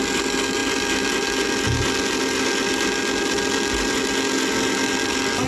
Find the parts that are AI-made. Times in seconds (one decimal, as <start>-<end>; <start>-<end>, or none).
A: none